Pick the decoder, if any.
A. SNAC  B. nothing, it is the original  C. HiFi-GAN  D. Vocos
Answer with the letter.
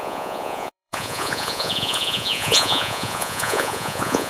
D